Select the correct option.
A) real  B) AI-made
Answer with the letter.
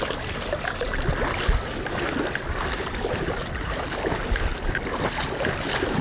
A